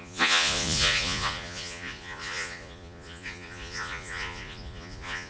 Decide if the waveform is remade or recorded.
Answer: remade